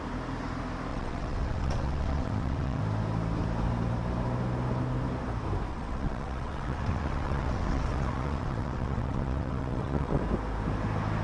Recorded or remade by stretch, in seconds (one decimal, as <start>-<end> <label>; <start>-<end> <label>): 0.0-0.9 recorded; 0.9-2.8 remade; 2.8-5.7 recorded; 5.7-10.2 remade; 10.2-11.2 recorded